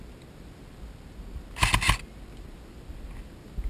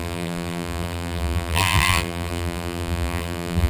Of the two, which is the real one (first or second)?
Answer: first